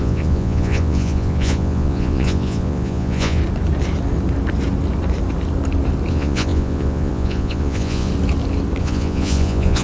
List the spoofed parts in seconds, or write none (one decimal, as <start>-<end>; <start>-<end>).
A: 0.0-3.4; 6.1-8.1; 8.8-9.8